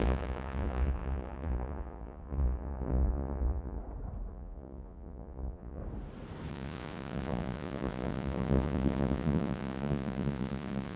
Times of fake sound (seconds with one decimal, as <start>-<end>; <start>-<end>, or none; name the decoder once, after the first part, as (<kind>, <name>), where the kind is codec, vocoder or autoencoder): 0.0-3.8 (vocoder, Vocos); 4.3-5.8; 6.5-11.0